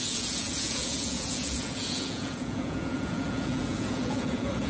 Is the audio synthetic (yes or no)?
yes